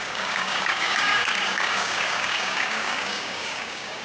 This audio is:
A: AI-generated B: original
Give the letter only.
A